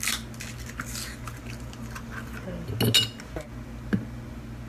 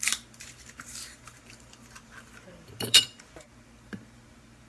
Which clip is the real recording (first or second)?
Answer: first